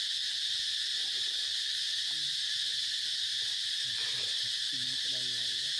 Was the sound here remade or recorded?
remade